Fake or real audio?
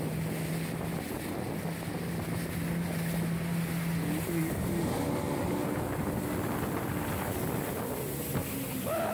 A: real